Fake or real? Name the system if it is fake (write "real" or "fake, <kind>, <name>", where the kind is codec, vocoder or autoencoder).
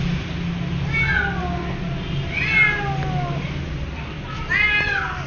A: real